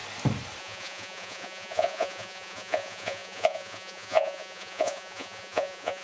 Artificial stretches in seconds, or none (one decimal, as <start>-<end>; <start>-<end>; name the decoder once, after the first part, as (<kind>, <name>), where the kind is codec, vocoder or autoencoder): 0.6-6.0 (vocoder, Vocos)